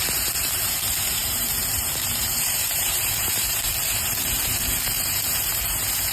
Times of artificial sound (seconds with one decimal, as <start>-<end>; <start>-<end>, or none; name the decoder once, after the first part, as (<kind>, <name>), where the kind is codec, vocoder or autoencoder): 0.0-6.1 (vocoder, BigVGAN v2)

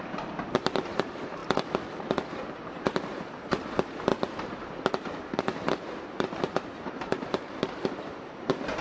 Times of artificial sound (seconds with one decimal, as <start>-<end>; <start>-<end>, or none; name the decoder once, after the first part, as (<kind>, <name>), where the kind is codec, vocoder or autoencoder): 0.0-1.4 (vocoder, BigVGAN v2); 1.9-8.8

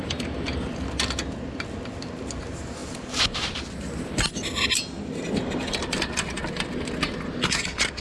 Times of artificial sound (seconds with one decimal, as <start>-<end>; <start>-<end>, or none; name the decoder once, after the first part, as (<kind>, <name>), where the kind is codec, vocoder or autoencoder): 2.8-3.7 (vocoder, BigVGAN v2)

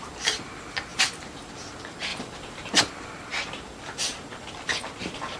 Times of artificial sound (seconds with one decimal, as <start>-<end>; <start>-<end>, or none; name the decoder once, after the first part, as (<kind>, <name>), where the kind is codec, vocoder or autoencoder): 0.9-1.5 (vocoder, BigVGAN v2)